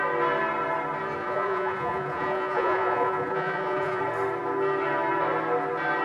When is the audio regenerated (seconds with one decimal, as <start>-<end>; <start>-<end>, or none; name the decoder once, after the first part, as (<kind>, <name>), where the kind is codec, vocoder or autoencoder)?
1.2-4.0 (vocoder, Vocos)